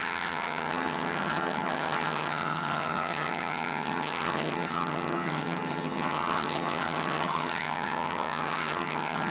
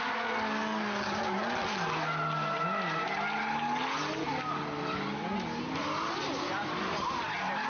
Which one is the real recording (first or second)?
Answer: second